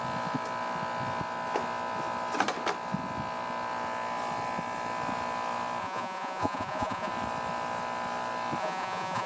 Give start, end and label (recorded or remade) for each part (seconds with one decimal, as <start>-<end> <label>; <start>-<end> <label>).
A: 0.0-5.8 recorded; 5.8-7.1 remade; 7.1-8.6 recorded; 8.6-9.3 remade